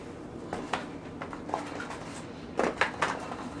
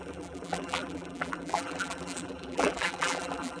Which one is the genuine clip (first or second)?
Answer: first